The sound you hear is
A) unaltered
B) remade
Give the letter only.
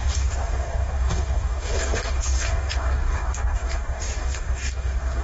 B